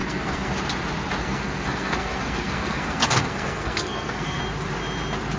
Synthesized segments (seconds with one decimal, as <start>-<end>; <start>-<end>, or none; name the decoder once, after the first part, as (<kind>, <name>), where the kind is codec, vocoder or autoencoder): 0.0-0.5 (codec, SNAC); 1.2-4.4